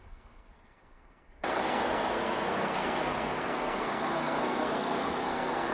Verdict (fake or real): fake